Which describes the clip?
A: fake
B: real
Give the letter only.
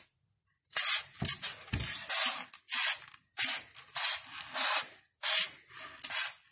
B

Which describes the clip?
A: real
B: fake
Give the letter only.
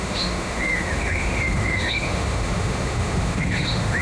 B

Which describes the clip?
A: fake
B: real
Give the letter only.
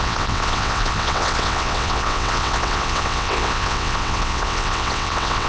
A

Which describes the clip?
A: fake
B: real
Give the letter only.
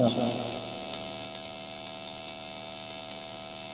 B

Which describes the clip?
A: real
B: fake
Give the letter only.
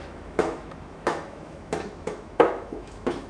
B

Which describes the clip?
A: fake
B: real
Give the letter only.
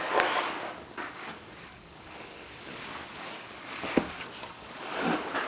A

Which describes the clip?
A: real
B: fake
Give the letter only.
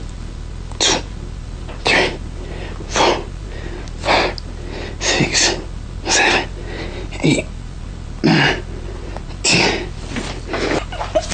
A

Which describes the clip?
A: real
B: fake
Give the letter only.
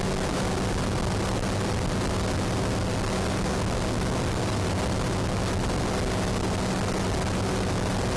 A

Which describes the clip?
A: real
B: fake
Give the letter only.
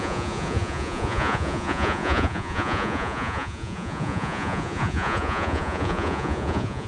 B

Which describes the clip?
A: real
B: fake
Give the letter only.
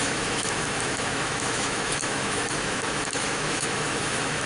B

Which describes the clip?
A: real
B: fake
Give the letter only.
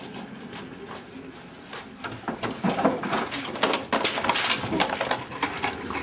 A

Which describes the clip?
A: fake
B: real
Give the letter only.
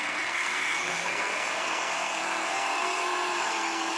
A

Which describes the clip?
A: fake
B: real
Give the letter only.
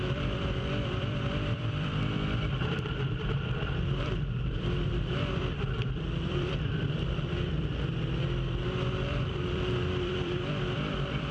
A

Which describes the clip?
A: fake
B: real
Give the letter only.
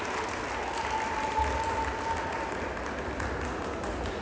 B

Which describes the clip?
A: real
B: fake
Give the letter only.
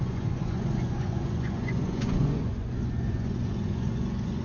B